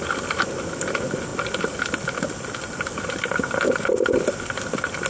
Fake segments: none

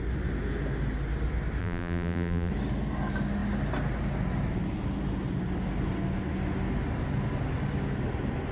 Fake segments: 1.6-2.5 (vocoder, BigVGAN v2)

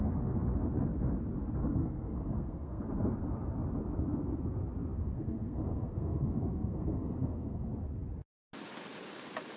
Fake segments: 1.6-2.8 (codec, SNAC); 5.0-7.7

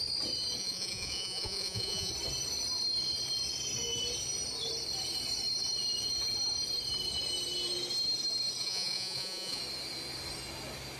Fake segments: 0.6-2.1 (vocoder, Vocos); 8.6-9.6

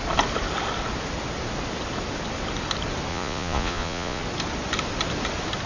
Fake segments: 3.1-4.2 (vocoder, Vocos)

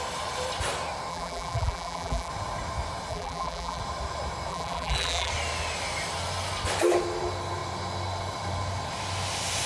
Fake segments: 1.1-2.3 (vocoder, BigVGAN v2); 3.1-3.8; 4.5-5.3

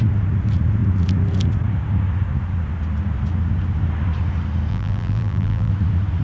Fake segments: 4.7-5.7 (vocoder, BigVGAN v2)